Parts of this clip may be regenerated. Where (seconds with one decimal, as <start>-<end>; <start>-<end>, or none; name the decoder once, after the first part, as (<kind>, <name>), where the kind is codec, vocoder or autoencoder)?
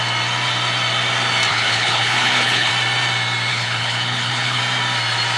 1.5-2.7 (codec, HILCodec); 3.5-4.6